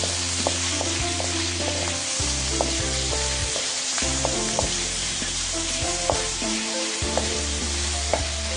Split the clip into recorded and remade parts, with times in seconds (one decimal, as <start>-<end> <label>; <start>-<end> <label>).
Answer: 0.0-3.4 recorded; 3.4-8.2 remade; 8.2-8.6 recorded